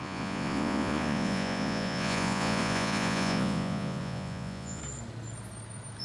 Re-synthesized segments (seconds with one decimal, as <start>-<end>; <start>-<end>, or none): 0.0-4.8